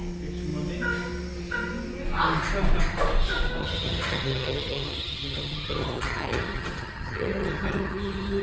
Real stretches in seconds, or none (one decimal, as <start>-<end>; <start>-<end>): 0.0-3.6